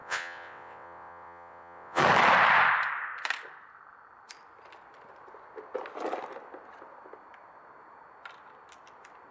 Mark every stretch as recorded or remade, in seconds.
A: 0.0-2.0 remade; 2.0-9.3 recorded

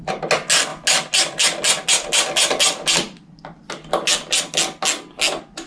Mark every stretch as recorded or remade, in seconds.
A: 0.0-5.7 recorded

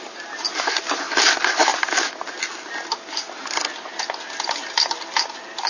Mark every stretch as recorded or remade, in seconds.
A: 0.0-5.7 recorded

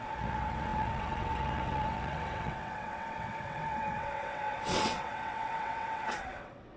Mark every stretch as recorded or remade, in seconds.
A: 0.0-6.8 remade

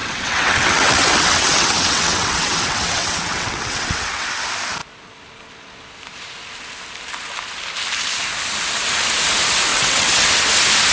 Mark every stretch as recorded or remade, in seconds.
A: 0.0-4.3 remade; 4.3-9.7 recorded; 9.7-10.3 remade; 10.3-10.9 recorded